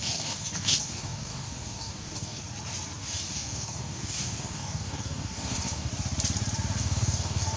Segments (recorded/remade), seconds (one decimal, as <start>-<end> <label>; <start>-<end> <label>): 0.0-2.4 remade; 2.4-3.0 recorded; 3.0-5.9 remade; 5.9-6.8 recorded; 6.8-7.6 remade